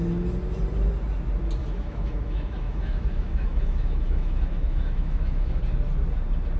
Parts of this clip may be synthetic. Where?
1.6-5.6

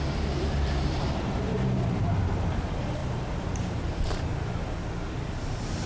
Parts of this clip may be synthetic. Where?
0.0-4.3

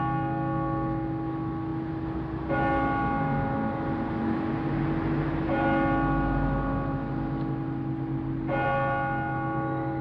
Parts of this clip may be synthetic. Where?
none

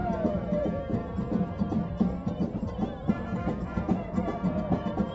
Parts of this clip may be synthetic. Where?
3.1-5.1

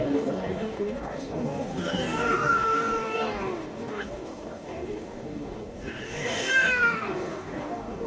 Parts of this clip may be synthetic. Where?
0.0-8.1

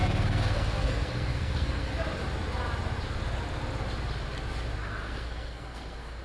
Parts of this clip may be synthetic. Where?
0.0-1.9; 4.8-6.2